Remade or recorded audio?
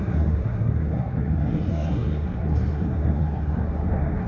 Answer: remade